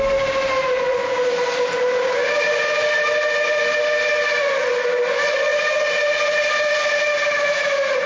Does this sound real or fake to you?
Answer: real